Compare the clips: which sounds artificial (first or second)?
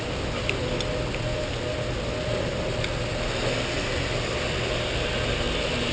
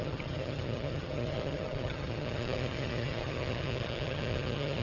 second